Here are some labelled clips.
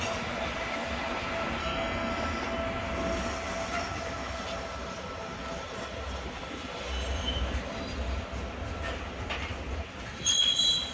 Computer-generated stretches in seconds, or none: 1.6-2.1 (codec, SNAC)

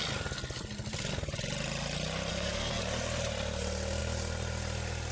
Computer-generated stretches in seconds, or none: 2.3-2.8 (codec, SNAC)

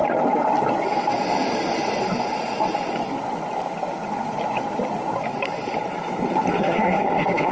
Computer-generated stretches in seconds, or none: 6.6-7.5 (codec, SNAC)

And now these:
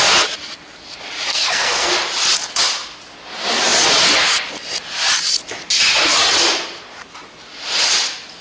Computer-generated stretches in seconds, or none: 1.3-1.9 (codec, SNAC)

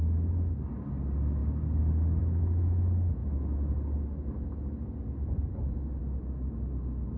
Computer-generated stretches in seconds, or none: none